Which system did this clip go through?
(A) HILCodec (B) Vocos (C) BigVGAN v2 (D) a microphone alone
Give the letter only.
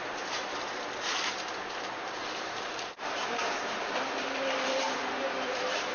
C